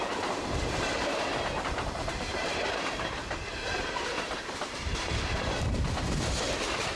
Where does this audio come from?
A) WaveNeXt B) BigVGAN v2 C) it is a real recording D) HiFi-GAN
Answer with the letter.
B